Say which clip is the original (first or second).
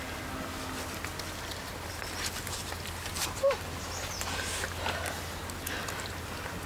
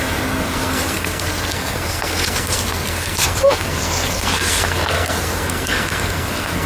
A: first